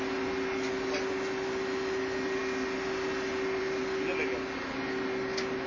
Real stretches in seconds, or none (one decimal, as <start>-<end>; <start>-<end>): 0.0-5.7